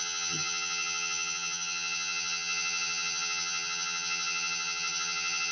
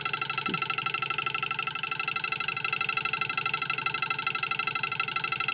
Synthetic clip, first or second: first